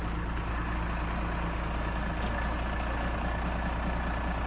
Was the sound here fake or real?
real